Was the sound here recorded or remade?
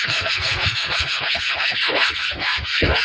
remade